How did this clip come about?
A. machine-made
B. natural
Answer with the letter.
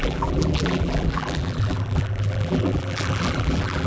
A